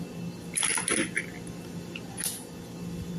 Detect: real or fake real